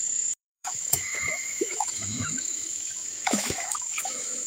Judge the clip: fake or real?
fake